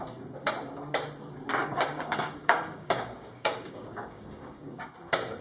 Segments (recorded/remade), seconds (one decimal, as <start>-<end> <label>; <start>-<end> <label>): 0.0-1.6 recorded; 1.6-4.8 remade; 4.8-5.4 recorded